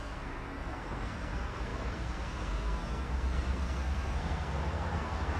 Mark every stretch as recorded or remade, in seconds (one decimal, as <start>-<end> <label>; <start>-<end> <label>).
0.0-5.4 remade